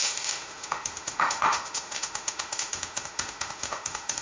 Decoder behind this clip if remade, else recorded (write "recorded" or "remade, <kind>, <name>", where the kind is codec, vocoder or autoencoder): remade, autoencoder, DAC-VAE